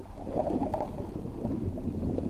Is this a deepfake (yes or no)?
no